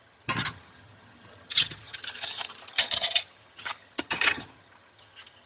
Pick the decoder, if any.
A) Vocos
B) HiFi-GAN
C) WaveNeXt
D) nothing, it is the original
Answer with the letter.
B